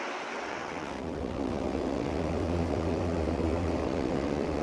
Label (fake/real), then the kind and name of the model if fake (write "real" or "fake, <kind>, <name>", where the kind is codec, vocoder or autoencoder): fake, vocoder, WaveNeXt